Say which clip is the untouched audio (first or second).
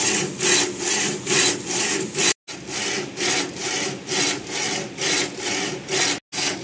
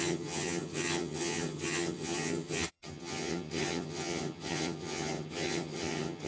first